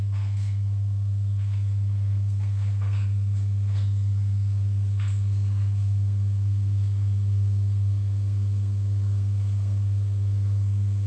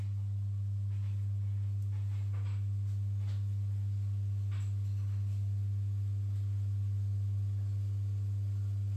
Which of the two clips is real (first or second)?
second